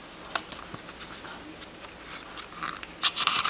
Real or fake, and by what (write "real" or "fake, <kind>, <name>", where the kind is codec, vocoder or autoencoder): real